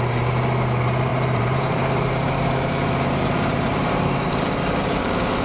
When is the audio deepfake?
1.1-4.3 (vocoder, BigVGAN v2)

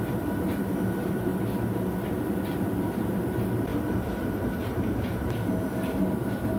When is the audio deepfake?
0.0-1.3 (vocoder, BigVGAN v2); 2.1-6.6

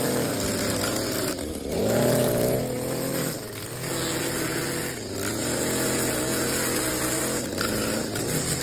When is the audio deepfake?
none

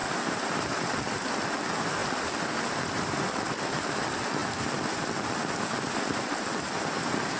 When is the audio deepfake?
0.0-1.3 (vocoder, BigVGAN v2); 2.0-2.5